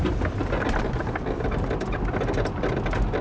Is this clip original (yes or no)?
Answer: yes